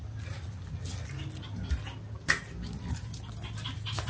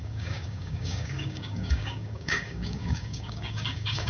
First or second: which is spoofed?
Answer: second